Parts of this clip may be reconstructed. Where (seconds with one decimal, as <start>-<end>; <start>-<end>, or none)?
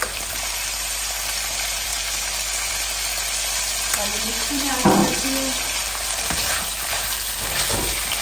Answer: 0.0-1.9; 2.7-5.0; 6.3-8.2